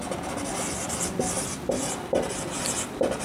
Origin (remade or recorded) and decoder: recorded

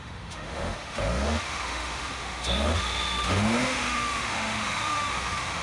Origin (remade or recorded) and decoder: remade, autoencoder, DAC-VAE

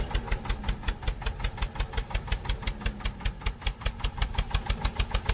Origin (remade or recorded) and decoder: recorded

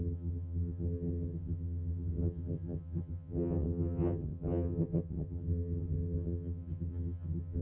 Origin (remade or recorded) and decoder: remade, vocoder, HiFi-GAN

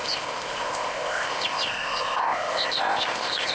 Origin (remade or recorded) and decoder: remade, codec, ZipCodec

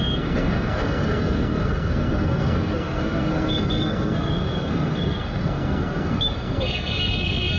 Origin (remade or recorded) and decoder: remade, codec, SNAC